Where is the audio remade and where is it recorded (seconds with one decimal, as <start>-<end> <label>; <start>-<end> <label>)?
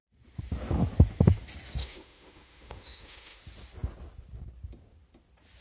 0.0-1.8 recorded; 1.8-3.4 remade; 3.4-5.6 recorded